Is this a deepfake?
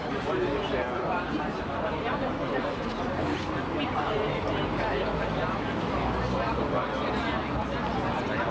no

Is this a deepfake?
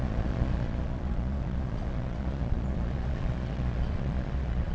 yes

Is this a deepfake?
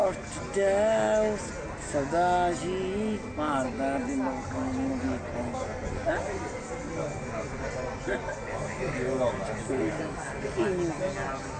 no